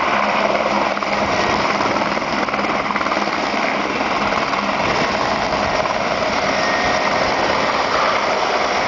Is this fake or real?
real